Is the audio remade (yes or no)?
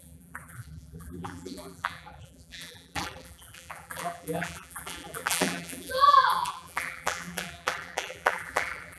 yes